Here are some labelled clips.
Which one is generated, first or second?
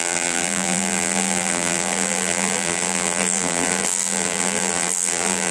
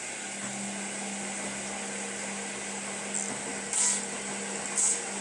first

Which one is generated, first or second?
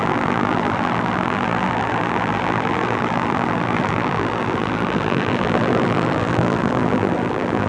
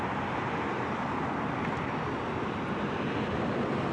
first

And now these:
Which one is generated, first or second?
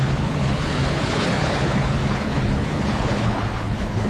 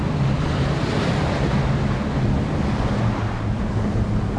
first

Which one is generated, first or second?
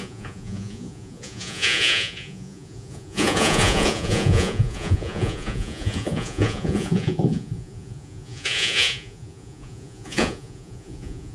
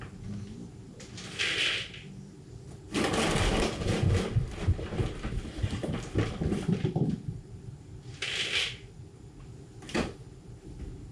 first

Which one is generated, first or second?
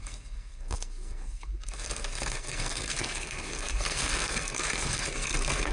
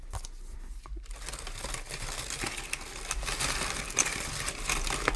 first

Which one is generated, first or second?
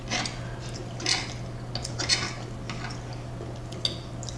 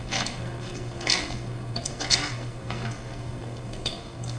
second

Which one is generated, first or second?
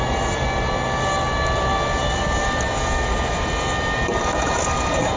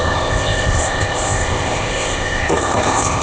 second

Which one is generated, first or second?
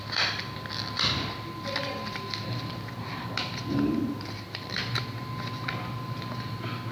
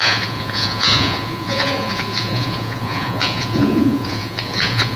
second